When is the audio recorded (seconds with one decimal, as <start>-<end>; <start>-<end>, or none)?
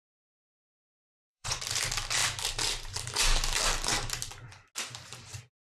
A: 0.0-0.8; 1.6-5.6